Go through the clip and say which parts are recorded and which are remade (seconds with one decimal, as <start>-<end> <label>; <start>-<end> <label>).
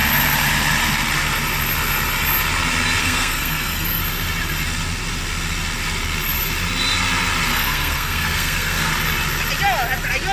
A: 0.0-3.0 recorded; 3.0-4.0 remade; 4.0-7.5 recorded; 7.5-8.9 remade; 8.9-10.3 recorded